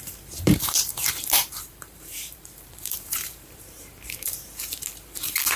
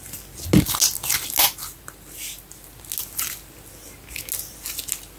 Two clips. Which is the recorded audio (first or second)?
second